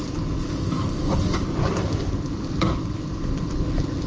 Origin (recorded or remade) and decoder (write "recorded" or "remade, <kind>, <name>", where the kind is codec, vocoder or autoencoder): recorded